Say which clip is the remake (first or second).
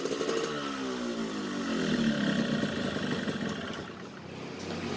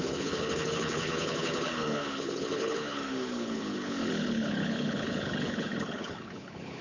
second